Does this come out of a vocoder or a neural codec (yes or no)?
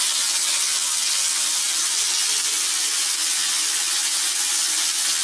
no